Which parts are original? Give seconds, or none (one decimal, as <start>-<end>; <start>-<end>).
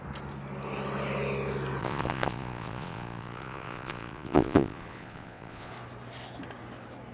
0.0-1.8; 5.7-7.1